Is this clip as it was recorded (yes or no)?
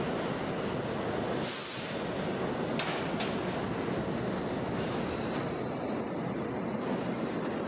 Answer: yes